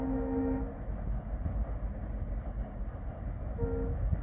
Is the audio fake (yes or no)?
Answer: no